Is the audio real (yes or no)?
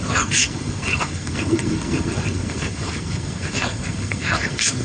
no